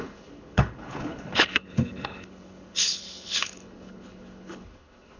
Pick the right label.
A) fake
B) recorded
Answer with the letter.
A